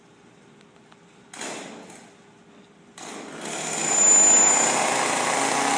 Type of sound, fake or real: real